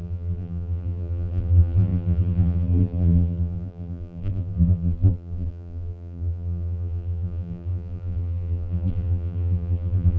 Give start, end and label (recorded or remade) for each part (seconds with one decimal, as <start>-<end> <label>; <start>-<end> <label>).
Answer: 0.0-10.2 remade